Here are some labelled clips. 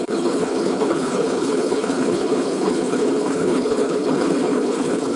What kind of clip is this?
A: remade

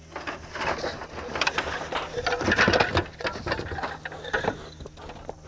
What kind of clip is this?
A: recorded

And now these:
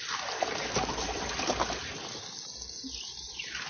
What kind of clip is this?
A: recorded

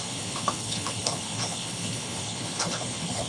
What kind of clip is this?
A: remade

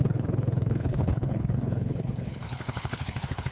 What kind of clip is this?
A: remade